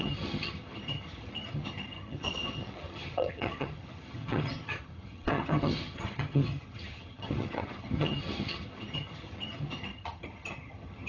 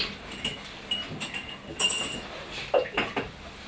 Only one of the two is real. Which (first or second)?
second